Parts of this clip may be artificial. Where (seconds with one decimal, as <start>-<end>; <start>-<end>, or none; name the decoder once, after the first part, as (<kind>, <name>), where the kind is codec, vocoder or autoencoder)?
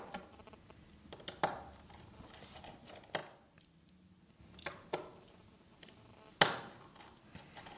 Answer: none